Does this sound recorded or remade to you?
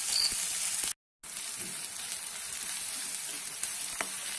recorded